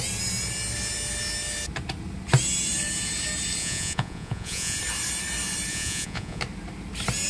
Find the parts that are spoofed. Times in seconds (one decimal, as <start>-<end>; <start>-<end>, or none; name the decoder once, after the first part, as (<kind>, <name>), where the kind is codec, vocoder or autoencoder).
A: 3.6-4.8 (vocoder, Vocos); 5.7-6.4